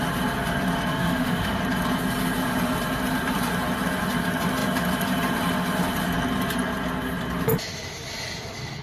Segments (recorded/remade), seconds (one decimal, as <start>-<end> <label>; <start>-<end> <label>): 0.0-0.9 recorded; 0.9-1.6 remade; 1.6-8.8 recorded